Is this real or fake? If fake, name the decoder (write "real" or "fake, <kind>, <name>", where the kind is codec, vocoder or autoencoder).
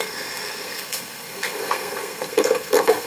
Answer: fake, codec, SNAC